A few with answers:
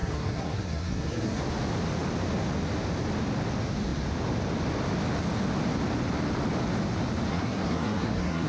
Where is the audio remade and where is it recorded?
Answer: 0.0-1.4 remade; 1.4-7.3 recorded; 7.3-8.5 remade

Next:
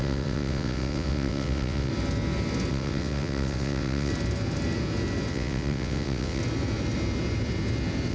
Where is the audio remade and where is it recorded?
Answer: 0.0-1.9 remade; 1.9-2.7 recorded; 2.7-4.1 remade; 4.1-5.3 recorded; 5.3-6.4 remade; 6.4-8.1 recorded

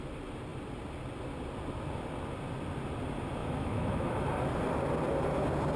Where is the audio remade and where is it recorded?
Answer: 0.0-3.4 recorded; 3.4-4.2 remade; 4.2-5.8 recorded

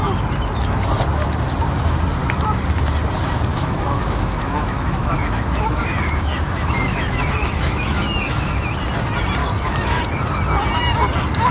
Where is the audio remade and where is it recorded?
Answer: 0.0-3.5 recorded; 3.5-8.7 remade; 8.7-9.4 recorded; 9.4-10.0 remade; 10.0-11.5 recorded

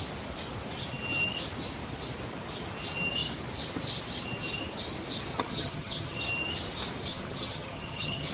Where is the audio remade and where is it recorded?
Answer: 0.0-5.3 recorded; 5.3-6.2 remade; 6.2-7.1 recorded; 7.1-8.3 remade

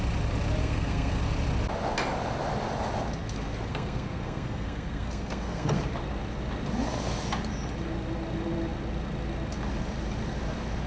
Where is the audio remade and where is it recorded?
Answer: 0.0-0.6 recorded; 0.6-1.2 remade; 1.2-3.7 recorded; 3.7-5.8 remade; 5.8-10.9 recorded

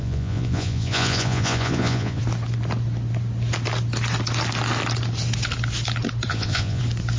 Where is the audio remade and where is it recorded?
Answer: 0.0-2.2 remade; 2.2-6.3 recorded; 6.3-6.8 remade; 6.8-7.2 recorded